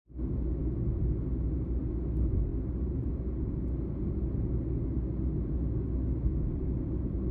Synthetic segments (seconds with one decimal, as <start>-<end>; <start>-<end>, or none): 6.3-7.3